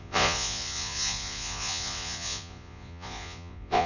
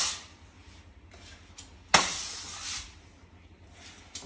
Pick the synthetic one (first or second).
first